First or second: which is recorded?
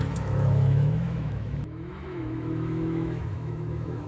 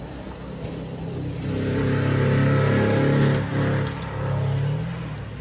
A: second